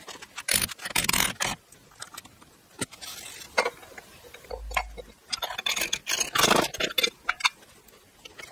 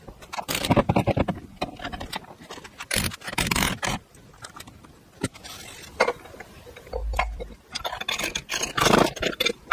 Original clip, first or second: first